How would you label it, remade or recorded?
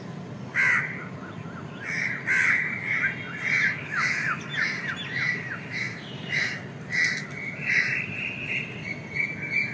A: recorded